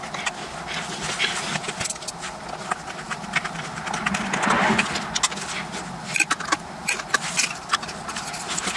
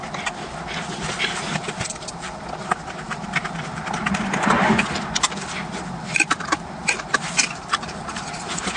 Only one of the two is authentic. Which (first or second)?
first